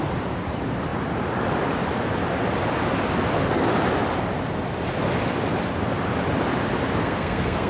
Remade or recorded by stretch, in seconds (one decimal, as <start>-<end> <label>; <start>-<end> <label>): 0.0-7.0 recorded; 7.0-7.7 remade